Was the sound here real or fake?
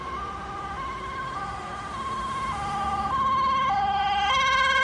real